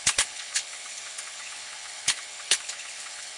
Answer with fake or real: fake